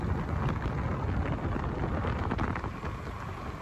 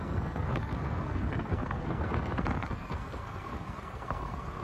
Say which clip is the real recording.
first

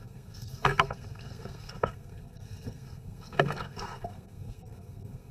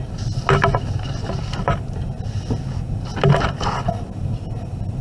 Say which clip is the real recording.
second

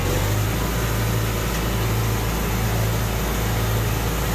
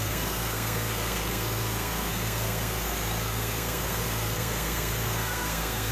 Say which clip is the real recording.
first